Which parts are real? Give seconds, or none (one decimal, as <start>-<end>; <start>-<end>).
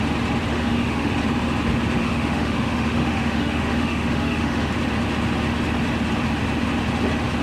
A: 0.0-0.5; 1.1-2.0; 4.7-7.4